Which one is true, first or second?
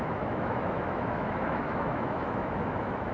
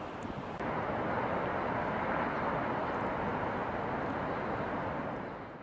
second